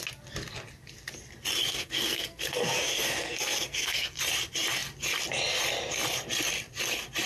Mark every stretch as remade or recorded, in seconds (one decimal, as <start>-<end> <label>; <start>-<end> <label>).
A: 0.0-1.7 recorded; 1.7-4.2 remade; 4.2-7.3 recorded